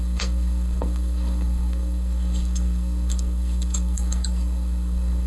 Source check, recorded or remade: remade